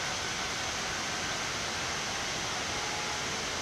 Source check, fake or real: real